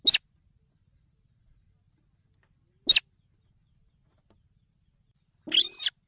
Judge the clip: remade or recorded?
recorded